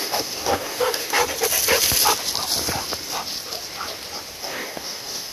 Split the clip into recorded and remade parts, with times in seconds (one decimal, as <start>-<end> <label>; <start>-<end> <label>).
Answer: 0.0-1.2 remade; 1.2-4.4 recorded; 4.4-5.3 remade